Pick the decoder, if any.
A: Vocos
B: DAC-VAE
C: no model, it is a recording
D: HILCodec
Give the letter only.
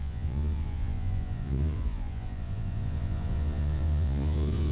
A